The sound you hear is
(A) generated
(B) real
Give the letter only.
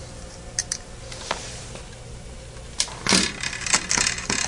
B